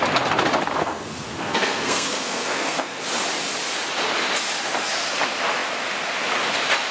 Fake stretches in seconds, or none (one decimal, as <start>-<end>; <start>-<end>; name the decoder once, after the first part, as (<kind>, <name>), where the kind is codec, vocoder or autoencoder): 0.8-3.0 (codec, SNAC)